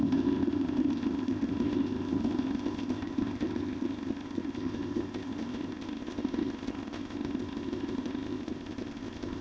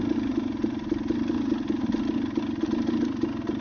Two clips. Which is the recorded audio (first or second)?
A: second